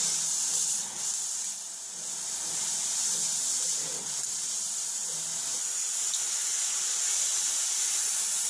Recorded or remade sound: recorded